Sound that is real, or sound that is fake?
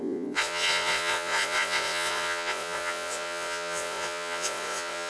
fake